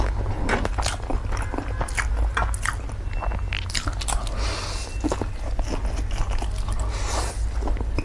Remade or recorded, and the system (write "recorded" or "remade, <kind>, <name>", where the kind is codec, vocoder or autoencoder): recorded